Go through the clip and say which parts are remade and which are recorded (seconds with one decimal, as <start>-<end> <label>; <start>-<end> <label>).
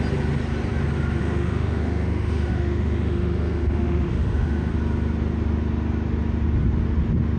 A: 0.0-1.2 recorded; 1.2-4.7 remade; 4.7-7.4 recorded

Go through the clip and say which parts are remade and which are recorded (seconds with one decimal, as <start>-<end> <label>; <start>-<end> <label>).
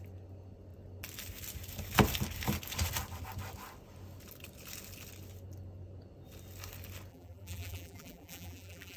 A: 0.0-7.1 recorded; 7.1-9.0 remade